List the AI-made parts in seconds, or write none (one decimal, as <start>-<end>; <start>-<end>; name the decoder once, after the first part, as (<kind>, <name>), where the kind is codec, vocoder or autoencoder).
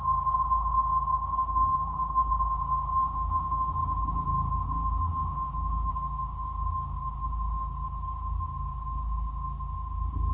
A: 1.3-2.3 (autoencoder, DAC-VAE); 3.0-3.7; 5.1-5.9